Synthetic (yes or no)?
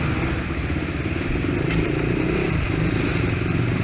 no